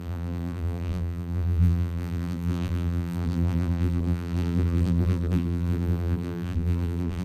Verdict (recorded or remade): remade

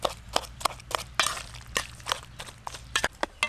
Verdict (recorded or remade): recorded